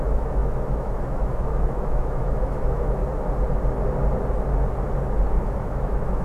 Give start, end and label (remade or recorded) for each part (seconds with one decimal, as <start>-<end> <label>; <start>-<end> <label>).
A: 0.0-3.0 remade; 3.0-5.4 recorded; 5.4-6.2 remade